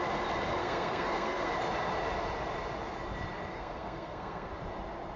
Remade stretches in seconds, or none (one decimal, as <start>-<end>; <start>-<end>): 0.6-1.5; 3.5-4.5